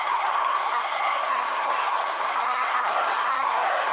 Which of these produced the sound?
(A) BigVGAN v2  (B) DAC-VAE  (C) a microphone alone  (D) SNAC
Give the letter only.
D